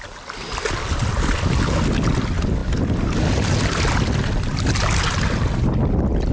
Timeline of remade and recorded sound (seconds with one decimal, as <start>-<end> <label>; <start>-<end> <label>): 0.0-6.3 recorded